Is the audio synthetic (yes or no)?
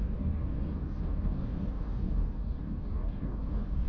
yes